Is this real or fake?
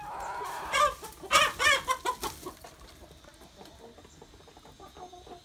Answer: real